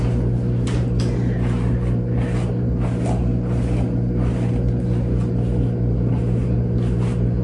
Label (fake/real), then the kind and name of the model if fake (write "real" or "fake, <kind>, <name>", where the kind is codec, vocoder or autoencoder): real